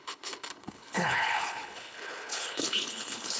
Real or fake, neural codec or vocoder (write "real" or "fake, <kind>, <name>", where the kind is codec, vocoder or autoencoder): fake, codec, HILCodec